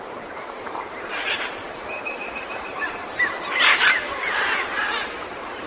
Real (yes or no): no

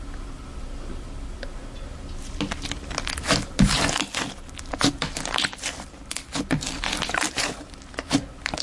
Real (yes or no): yes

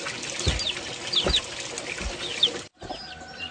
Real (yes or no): yes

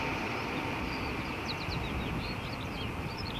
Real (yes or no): no